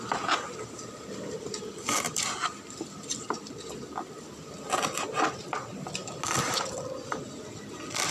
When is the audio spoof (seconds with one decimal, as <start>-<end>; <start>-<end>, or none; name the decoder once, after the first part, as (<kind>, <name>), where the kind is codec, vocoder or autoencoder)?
none